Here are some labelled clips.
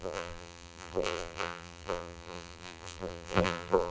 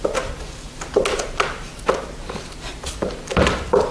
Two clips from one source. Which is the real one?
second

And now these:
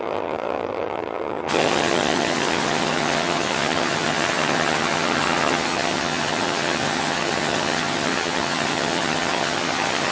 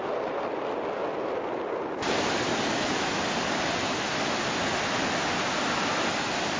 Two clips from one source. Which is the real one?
second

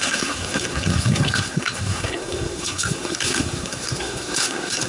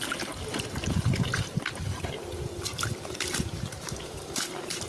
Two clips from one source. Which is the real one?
second